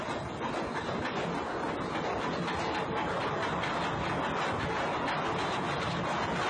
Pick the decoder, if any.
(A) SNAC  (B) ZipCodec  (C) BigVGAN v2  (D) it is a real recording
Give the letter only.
D